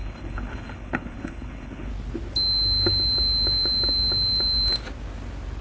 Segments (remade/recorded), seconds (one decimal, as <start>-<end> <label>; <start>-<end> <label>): 0.0-1.9 remade; 1.9-5.6 recorded